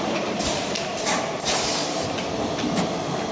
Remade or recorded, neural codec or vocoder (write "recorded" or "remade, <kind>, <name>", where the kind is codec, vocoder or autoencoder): recorded